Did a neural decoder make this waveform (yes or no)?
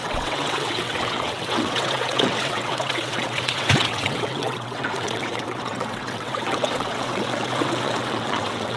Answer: yes